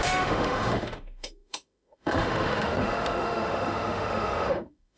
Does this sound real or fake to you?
fake